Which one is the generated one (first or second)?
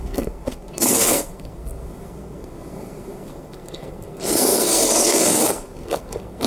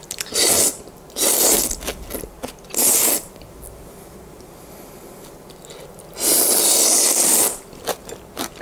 first